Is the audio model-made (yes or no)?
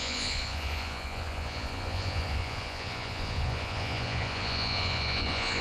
yes